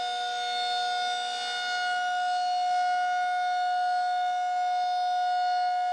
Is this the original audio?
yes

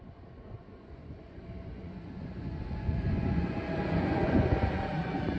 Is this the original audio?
no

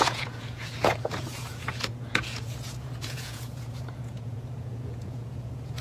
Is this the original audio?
no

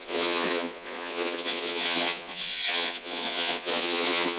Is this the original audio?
no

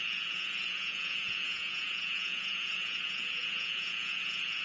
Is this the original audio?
no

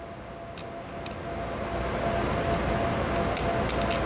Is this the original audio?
yes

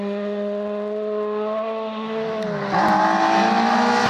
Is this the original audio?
yes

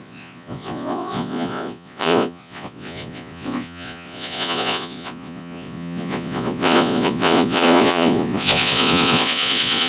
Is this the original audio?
no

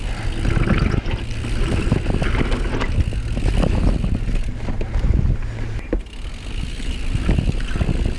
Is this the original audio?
yes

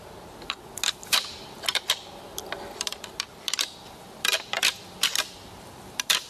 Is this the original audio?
yes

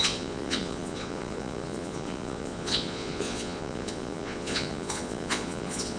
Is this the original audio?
no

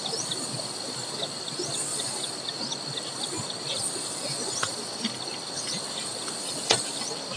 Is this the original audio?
yes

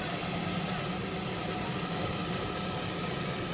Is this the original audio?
yes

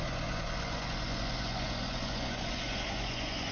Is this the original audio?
no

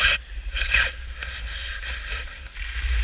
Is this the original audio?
yes